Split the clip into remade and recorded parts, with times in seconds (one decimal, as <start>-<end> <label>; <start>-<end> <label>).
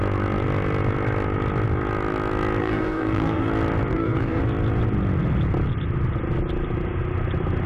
0.0-2.6 recorded; 2.6-3.5 remade; 3.5-3.9 recorded; 3.9-4.4 remade; 4.4-7.7 recorded